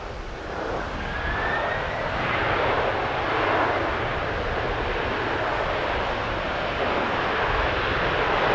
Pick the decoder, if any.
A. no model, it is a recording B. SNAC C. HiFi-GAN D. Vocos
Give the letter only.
A